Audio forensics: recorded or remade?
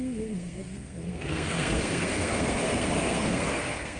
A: remade